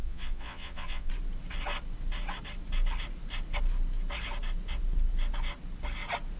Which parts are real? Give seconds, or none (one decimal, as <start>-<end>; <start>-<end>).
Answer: 1.1-6.4